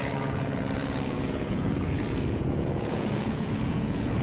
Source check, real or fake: fake